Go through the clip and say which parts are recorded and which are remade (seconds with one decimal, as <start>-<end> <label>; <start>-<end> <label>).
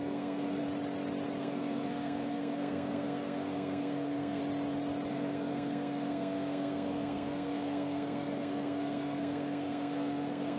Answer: 0.0-0.6 remade; 0.6-1.4 recorded; 1.4-4.4 remade; 4.4-5.1 recorded; 5.1-10.6 remade